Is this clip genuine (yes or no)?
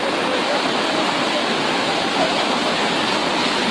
yes